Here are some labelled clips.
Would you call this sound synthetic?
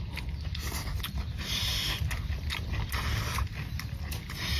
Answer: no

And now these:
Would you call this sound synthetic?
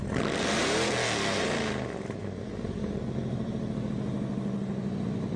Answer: no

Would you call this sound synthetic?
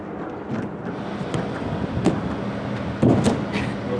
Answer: no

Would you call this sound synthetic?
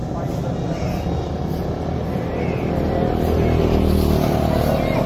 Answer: no